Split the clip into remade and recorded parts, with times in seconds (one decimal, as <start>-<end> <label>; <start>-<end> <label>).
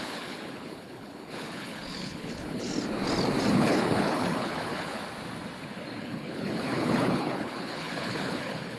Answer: 0.0-2.7 remade; 2.7-3.5 recorded; 3.5-5.0 remade; 5.0-6.0 recorded; 6.0-8.8 remade